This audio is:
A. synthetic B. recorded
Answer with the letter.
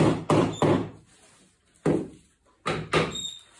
B